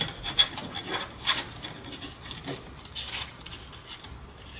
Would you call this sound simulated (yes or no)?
no